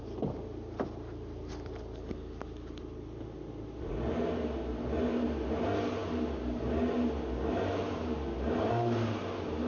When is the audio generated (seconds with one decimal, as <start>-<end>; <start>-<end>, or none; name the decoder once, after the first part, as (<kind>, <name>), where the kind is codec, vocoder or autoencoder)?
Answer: none